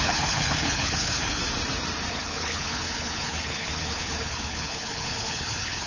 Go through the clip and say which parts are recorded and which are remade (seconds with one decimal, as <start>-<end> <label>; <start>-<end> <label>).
0.0-1.4 remade; 1.4-2.1 recorded; 2.1-5.9 remade